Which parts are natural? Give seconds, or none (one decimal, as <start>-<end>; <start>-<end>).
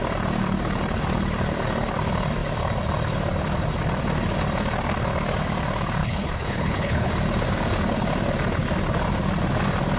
0.0-6.0; 7.1-10.0